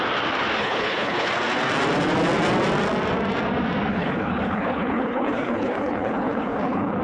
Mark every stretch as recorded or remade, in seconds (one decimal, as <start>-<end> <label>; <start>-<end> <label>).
0.0-0.6 recorded; 0.6-1.3 remade; 1.3-3.9 recorded; 3.9-7.0 remade